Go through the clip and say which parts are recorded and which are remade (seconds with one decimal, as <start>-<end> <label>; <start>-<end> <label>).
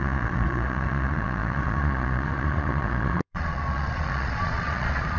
0.0-5.2 remade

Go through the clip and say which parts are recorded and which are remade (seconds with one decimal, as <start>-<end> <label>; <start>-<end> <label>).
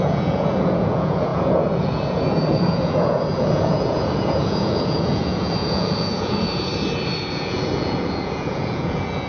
0.0-6.7 remade; 6.7-7.3 recorded; 7.3-9.3 remade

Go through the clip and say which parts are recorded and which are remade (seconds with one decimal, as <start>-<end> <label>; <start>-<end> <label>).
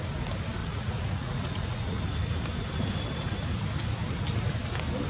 0.0-0.6 recorded; 0.6-2.0 remade; 2.0-5.1 recorded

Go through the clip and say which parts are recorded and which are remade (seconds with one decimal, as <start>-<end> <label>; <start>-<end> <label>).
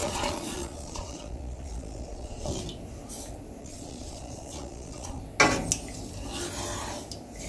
0.0-2.6 remade; 2.6-3.6 recorded; 3.6-5.2 remade; 5.2-7.5 recorded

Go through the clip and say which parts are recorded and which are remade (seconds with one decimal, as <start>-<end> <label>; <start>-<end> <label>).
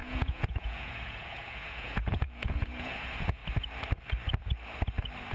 0.0-3.4 remade; 3.4-5.3 recorded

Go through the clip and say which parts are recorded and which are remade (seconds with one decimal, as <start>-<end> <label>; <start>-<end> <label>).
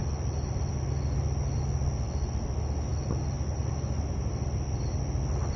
0.0-5.6 recorded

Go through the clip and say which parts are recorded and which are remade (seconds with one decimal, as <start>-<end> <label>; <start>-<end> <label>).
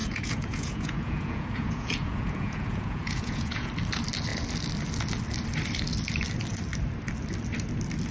0.0-3.7 remade; 3.7-8.1 recorded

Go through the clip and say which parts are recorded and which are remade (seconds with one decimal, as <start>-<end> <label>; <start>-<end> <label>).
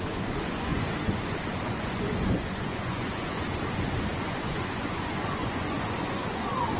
0.0-6.8 remade